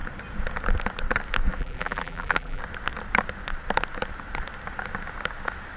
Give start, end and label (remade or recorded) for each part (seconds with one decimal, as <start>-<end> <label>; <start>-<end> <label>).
0.0-1.6 recorded; 1.6-2.6 remade; 2.6-5.8 recorded